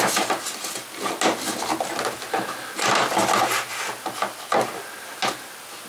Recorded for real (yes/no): yes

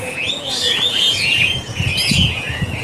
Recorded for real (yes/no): no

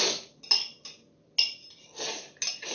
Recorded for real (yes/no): yes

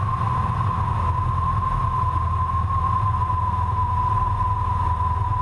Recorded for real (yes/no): yes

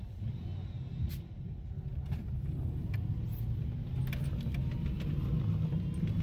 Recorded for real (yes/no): yes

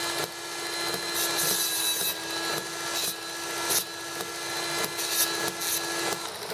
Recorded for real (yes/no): yes